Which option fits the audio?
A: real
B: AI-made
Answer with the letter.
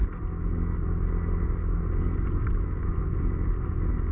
A